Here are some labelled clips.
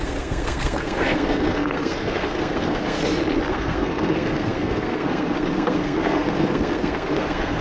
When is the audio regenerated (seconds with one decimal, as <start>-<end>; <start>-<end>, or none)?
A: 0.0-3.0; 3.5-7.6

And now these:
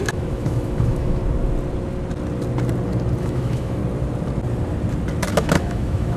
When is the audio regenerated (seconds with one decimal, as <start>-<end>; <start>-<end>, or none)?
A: 0.0-1.2; 3.2-3.8; 5.3-6.2

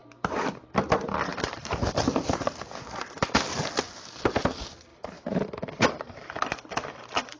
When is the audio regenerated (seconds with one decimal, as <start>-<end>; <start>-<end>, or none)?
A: 0.0-0.6; 1.3-1.9; 4.9-7.4

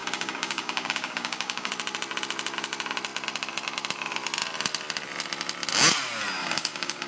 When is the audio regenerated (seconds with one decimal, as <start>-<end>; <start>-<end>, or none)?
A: 0.0-1.7; 6.4-7.1